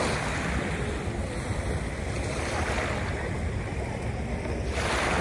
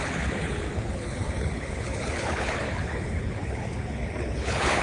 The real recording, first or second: first